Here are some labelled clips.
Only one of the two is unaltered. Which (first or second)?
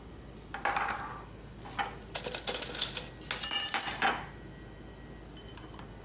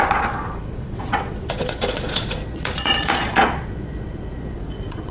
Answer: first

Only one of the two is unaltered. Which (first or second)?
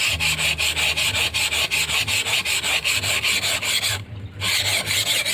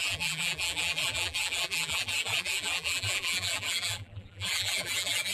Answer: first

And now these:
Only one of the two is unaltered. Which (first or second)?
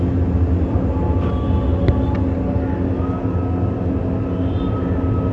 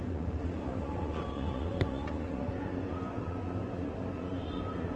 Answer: first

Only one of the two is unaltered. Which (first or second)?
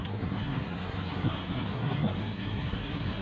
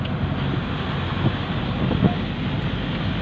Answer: second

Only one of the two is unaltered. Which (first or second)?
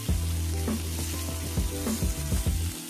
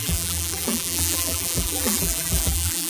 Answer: first